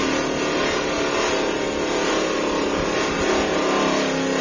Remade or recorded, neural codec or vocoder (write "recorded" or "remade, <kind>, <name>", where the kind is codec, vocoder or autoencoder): recorded